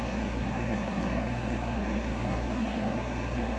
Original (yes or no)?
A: no